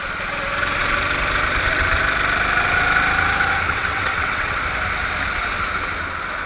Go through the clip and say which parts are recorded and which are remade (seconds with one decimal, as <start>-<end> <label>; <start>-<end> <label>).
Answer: 0.0-3.7 recorded; 3.7-4.6 remade; 4.6-6.5 recorded